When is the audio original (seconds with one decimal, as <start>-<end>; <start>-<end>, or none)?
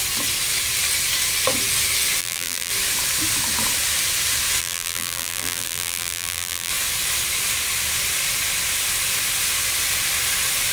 0.0-2.2; 2.7-4.6; 6.7-10.7